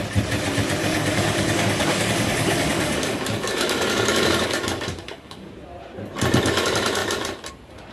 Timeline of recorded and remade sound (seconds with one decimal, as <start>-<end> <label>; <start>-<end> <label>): 0.0-0.8 recorded; 0.8-5.5 remade; 5.5-7.9 recorded